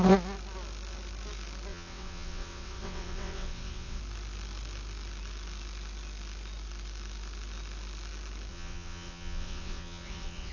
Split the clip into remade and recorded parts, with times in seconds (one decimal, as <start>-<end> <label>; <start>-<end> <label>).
0.0-1.7 recorded; 1.7-4.0 remade; 4.0-8.5 recorded; 8.5-10.5 remade